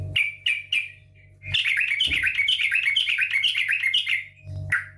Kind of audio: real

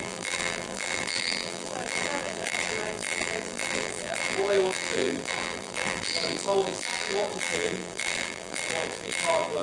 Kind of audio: fake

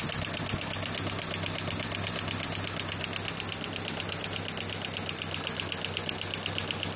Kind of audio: real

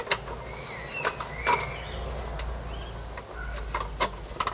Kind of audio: real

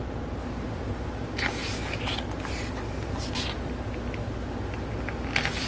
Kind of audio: real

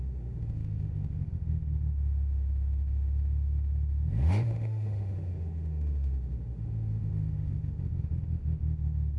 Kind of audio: fake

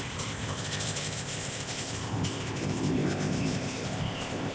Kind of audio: fake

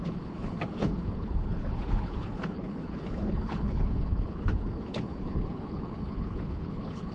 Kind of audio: fake